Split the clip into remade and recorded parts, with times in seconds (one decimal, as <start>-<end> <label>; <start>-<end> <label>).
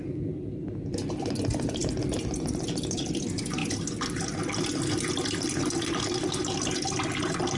0.0-7.6 recorded